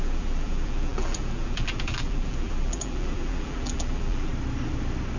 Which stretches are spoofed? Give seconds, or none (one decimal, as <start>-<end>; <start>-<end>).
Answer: 0.0-4.3